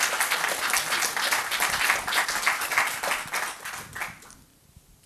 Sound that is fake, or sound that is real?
real